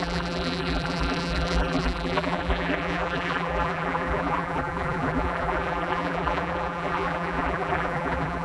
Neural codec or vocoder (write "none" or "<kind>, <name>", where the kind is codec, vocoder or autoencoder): vocoder, BigVGAN v2